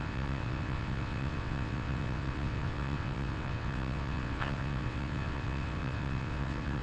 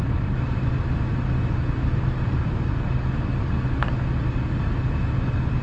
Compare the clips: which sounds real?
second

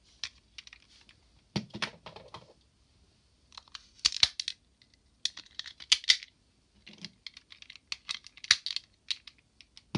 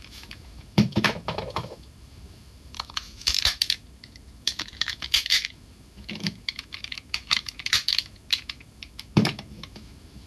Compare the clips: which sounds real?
first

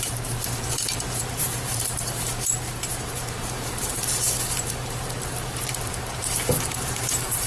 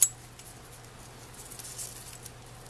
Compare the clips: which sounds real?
second